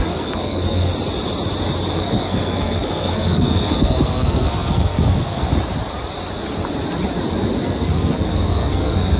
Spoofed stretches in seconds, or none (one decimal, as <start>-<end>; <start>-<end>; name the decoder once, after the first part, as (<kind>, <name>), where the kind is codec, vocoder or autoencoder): 0.0-0.9 (codec, SNAC); 1.9-5.5; 7.6-9.2